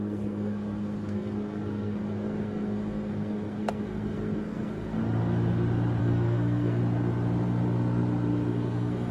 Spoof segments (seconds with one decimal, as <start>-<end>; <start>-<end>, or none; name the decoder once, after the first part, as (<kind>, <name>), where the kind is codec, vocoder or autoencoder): 0.0-5.0 (codec, SNAC); 6.0-6.8; 8.5-9.1

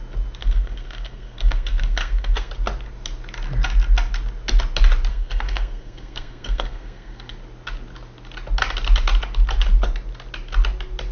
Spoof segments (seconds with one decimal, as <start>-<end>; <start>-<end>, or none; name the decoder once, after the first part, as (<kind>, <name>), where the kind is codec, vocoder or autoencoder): 0.4-2.5 (codec, SNAC); 5.1-7.3